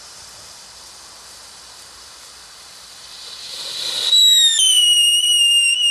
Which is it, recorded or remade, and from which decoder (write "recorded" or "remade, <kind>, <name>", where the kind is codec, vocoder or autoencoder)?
recorded